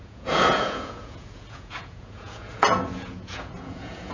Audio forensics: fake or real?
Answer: fake